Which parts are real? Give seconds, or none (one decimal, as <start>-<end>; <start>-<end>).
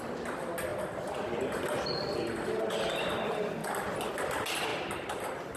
0.0-5.6